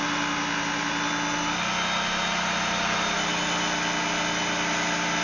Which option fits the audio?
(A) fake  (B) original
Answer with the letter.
B